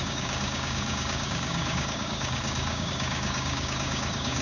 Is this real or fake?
fake